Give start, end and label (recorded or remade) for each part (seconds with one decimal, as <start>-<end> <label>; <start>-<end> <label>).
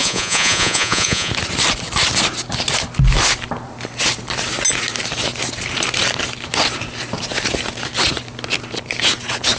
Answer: 0.0-1.3 remade; 1.3-9.6 recorded